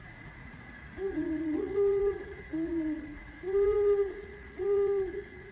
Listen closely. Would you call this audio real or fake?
fake